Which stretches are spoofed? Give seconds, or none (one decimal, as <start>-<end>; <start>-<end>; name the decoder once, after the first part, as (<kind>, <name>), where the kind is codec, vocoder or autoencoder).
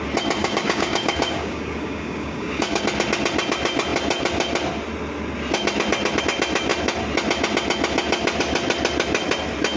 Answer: 0.4-2.8 (codec, DAC)